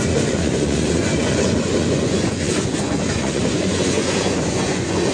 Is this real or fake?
fake